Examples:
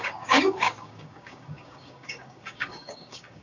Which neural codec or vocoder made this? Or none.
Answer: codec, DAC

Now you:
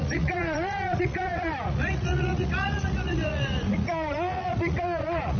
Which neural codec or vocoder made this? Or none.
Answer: vocoder, Vocos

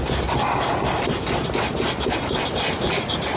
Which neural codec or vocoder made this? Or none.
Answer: none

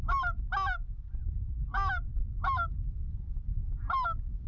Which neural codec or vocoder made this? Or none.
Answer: none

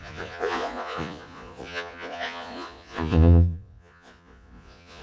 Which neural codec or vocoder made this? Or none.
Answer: vocoder, Vocos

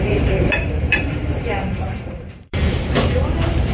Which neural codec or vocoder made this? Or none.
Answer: vocoder, BigVGAN v2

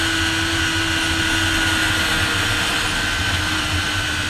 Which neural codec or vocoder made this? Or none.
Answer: none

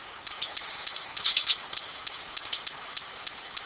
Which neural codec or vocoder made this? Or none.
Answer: none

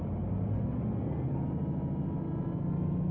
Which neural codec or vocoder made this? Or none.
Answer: none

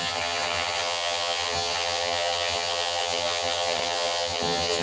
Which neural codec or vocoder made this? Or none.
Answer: vocoder, HiFi-GAN